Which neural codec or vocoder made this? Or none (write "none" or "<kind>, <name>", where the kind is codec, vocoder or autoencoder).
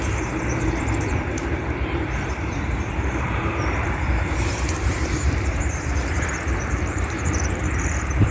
vocoder, BigVGAN v2